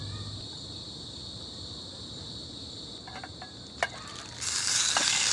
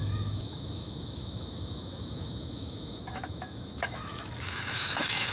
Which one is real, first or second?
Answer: first